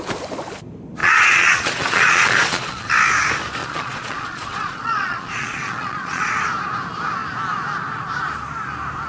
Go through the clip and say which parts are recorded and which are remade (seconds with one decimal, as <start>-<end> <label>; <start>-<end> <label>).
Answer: 0.0-1.0 recorded; 1.0-2.9 remade; 2.9-3.6 recorded; 3.6-6.3 remade; 6.3-9.1 recorded